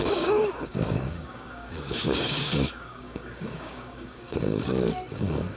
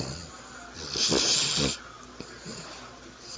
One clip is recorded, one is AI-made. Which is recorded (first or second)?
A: second